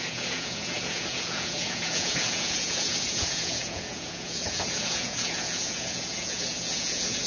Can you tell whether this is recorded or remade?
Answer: remade